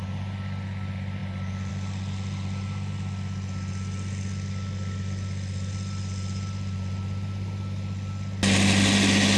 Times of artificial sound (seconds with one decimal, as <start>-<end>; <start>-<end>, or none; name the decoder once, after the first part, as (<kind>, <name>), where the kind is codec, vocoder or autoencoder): none